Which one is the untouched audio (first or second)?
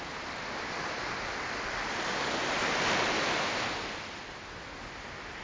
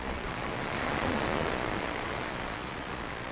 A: first